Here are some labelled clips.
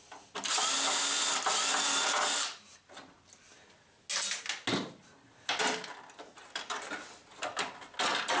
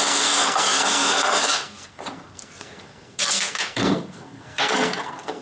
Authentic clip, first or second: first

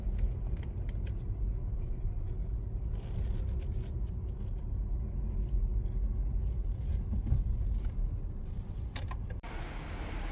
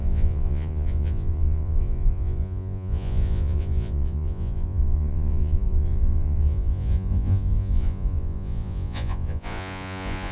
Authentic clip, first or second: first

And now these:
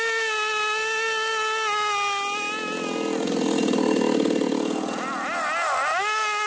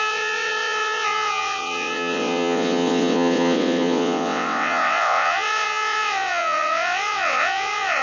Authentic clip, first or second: first